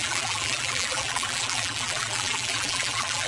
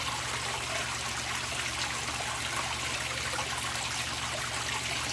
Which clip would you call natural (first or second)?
second